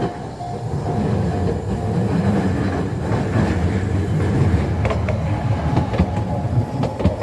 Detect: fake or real real